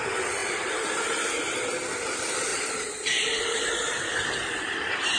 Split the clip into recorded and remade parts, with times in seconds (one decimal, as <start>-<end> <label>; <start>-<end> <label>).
0.0-0.4 recorded; 0.4-1.6 remade; 1.6-2.5 recorded; 2.5-3.4 remade; 3.4-5.2 recorded